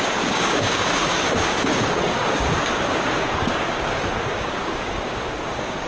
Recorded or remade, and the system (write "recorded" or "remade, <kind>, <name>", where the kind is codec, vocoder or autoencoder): remade, codec, DAC